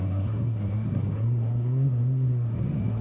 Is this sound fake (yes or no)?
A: yes